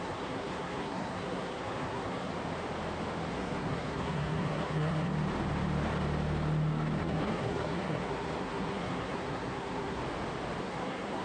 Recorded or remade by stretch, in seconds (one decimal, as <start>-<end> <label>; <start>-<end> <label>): 0.0-2.3 remade; 2.3-3.3 recorded; 3.3-5.1 remade; 5.1-7.0 recorded; 7.0-10.0 remade; 10.0-10.6 recorded; 10.6-11.2 remade

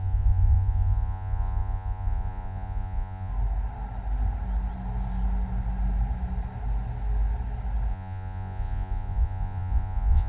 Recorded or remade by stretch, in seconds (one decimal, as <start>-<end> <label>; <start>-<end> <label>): 0.0-3.3 remade; 3.3-7.9 recorded; 7.9-10.3 remade

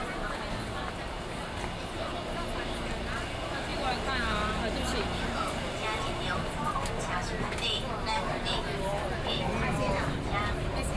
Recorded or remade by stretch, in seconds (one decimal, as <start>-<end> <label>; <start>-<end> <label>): 0.0-11.0 recorded

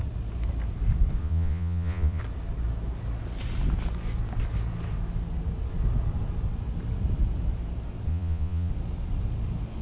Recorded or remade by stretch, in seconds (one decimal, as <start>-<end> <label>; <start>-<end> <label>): 0.0-1.2 recorded; 1.2-2.2 remade; 2.2-8.1 recorded; 8.1-8.7 remade; 8.7-9.8 recorded

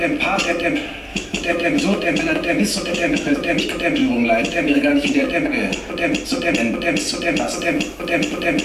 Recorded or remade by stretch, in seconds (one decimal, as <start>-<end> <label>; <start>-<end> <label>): 0.0-1.1 recorded; 1.1-3.6 remade; 3.6-4.0 recorded; 4.0-5.3 remade; 5.3-8.6 recorded

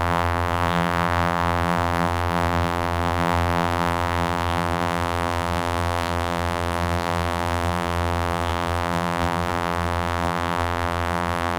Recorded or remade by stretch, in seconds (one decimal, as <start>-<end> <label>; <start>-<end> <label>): 0.0-11.6 remade